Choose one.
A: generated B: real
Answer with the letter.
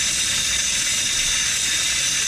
B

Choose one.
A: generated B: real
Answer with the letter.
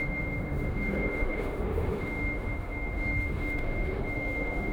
A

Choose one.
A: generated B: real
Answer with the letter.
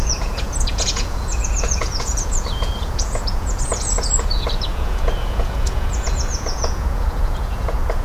A